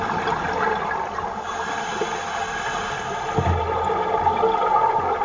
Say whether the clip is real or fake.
real